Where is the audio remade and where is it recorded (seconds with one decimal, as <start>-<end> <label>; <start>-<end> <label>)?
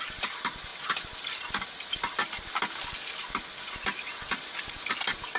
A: 0.0-5.4 recorded